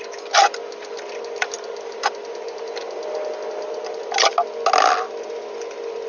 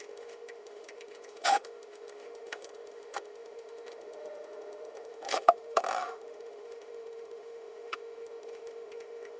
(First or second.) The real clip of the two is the first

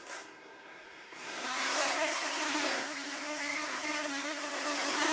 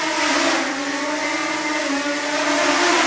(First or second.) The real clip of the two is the second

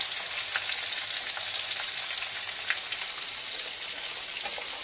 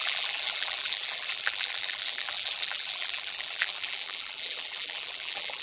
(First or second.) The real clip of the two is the first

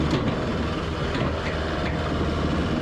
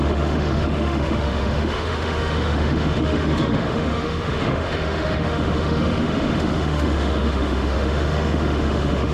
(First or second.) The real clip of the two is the first